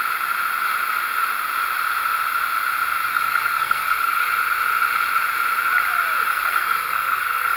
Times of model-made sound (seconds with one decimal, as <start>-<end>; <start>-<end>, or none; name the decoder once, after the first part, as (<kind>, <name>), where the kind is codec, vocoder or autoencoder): 3.1-4.2 (codec, SNAC); 6.3-7.6